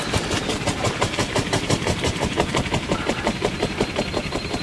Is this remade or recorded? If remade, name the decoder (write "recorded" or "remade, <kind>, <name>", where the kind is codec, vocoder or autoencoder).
remade, vocoder, BigVGAN v2